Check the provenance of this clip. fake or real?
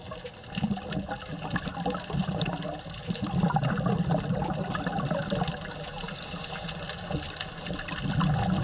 real